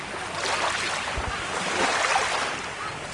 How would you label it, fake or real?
real